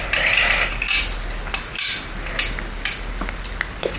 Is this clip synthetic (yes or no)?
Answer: no